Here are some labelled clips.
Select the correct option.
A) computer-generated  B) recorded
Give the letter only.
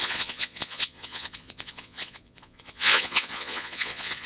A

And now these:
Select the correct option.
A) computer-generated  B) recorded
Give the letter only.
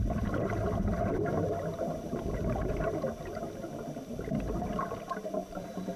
B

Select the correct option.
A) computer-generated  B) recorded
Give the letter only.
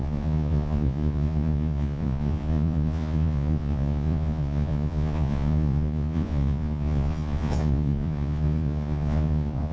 A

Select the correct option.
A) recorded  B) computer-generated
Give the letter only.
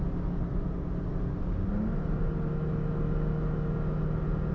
A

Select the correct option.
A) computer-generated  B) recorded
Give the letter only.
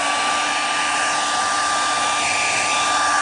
B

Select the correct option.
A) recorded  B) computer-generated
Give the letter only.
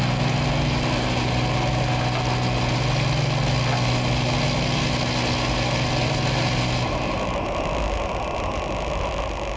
A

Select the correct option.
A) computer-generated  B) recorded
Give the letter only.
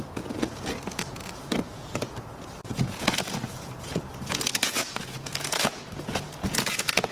A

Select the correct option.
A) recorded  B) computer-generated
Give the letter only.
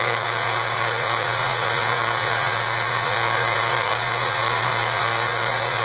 B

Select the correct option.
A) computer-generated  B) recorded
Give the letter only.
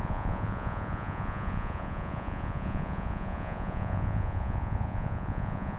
A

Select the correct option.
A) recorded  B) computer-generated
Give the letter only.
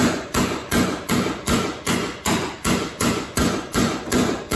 B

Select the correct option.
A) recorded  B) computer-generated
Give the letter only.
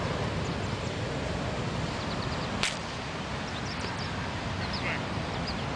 A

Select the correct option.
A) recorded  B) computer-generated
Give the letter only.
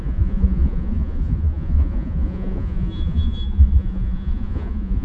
B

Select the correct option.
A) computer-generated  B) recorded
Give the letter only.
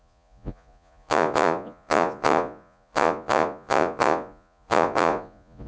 A